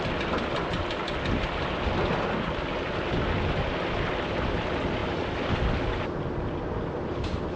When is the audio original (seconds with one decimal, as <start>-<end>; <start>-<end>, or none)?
0.0-7.6